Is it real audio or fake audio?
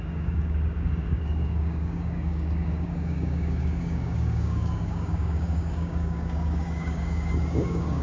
fake